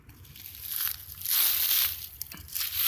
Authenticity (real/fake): real